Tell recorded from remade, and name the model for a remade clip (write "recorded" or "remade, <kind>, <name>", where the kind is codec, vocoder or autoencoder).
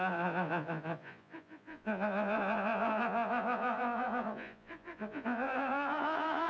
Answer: remade, vocoder, Vocos